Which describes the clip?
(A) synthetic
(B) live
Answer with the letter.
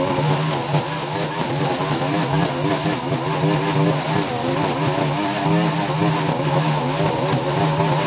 B